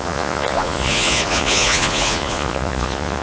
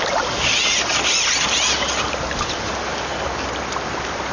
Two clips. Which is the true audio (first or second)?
second